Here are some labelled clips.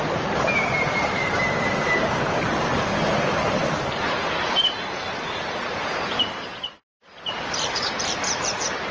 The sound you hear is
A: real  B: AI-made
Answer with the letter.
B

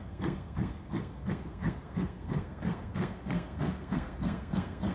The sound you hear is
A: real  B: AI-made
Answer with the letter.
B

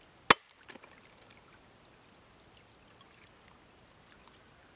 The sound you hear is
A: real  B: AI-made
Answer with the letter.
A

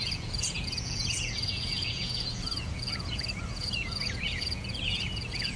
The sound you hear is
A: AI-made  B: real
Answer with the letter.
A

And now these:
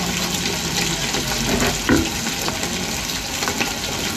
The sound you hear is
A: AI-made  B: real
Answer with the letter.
B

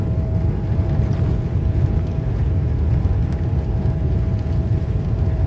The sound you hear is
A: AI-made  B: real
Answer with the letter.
A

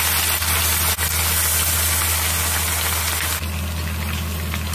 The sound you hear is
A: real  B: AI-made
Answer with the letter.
A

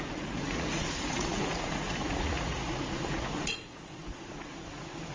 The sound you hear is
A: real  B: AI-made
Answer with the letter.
B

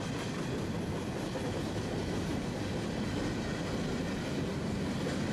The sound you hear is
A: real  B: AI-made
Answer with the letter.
A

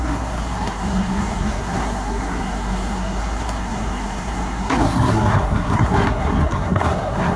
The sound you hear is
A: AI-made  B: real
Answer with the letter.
A